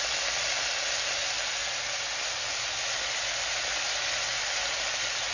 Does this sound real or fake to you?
real